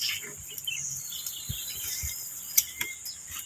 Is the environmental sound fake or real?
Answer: fake